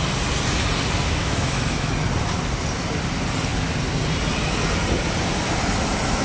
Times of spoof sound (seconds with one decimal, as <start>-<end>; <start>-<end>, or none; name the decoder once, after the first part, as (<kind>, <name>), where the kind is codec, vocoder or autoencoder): 1.2-1.9 (autoencoder, DAC-VAE)